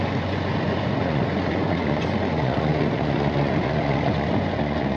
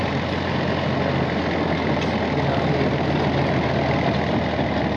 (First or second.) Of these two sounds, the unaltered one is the second